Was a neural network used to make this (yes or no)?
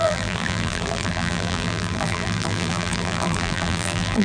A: yes